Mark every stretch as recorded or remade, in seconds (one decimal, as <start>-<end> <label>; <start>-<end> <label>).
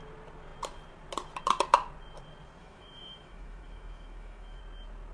0.0-2.6 recorded; 2.6-4.6 remade; 4.6-5.1 recorded